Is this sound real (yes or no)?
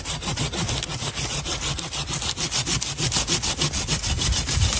yes